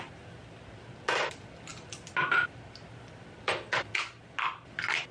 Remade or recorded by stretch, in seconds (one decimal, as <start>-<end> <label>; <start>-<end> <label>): 0.0-0.4 recorded; 0.4-0.9 remade; 0.9-5.1 recorded